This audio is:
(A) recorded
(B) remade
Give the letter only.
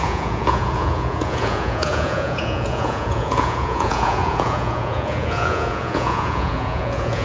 B